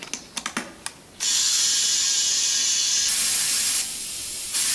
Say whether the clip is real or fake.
real